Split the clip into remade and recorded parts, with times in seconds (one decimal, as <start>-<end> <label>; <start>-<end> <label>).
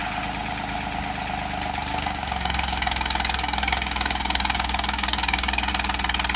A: 0.0-1.9 recorded; 1.9-5.7 remade; 5.7-6.4 recorded